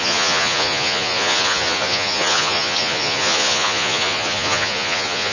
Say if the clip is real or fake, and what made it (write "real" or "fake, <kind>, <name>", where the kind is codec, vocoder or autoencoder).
fake, vocoder, Vocos